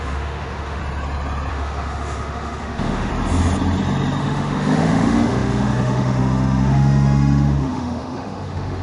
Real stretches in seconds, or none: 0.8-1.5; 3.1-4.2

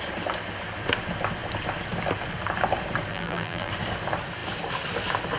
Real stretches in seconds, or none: 0.0-3.1; 3.7-5.4

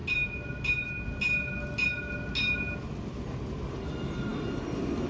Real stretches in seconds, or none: 0.0-5.1

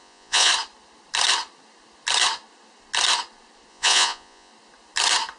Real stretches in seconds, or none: 0.5-3.7; 4.5-5.4

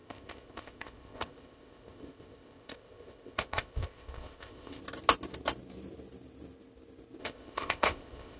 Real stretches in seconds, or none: 4.8-7.2

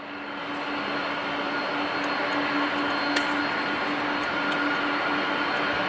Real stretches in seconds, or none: 0.0-5.9

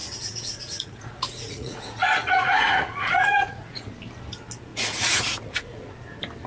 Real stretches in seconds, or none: 3.9-4.7; 5.9-6.5